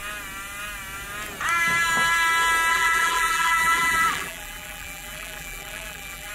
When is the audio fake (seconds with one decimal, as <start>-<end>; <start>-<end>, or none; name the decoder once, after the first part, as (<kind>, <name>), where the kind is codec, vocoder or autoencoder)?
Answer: 2.7-6.3 (vocoder, BigVGAN v2)